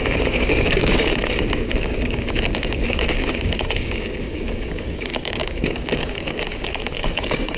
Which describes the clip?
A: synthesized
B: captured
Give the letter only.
A